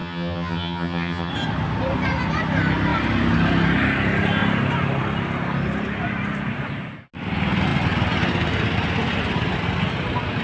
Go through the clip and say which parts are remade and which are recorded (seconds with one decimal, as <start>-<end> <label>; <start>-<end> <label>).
0.0-1.3 remade; 1.3-10.4 recorded